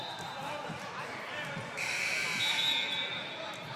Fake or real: fake